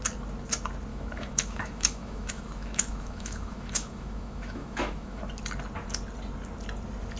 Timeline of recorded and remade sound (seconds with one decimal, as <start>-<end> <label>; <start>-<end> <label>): 0.0-0.9 recorded; 0.9-5.2 remade; 5.2-7.2 recorded

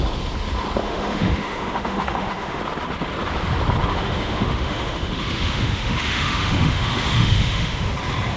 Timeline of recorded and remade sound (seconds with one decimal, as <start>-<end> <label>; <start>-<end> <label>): 0.0-0.8 recorded; 0.8-2.6 remade; 2.6-3.9 recorded; 3.9-7.9 remade; 7.9-8.4 recorded

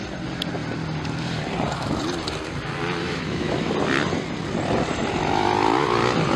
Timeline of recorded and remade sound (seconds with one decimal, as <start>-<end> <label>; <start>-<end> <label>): 0.0-3.0 recorded; 3.0-3.7 remade; 3.7-6.4 recorded

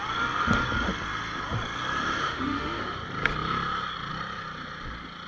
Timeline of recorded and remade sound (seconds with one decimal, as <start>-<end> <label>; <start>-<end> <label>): 0.0-2.2 recorded; 2.2-2.8 remade; 2.8-5.3 recorded